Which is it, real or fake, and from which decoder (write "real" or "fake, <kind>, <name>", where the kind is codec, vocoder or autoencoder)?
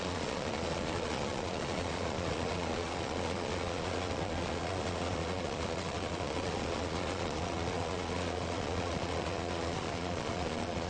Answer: fake, vocoder, Vocos